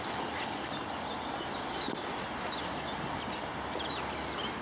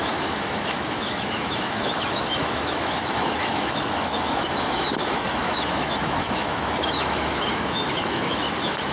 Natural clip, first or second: first